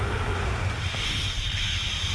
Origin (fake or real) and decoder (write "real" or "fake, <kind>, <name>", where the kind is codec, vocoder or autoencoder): real